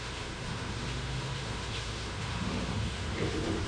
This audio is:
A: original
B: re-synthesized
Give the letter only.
B